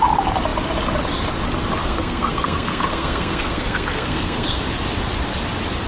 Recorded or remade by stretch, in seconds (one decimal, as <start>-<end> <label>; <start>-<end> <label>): 0.0-1.8 recorded; 1.8-4.6 remade; 4.6-5.9 recorded